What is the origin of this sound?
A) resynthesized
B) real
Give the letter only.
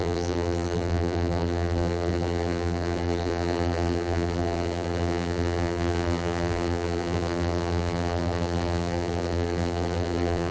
A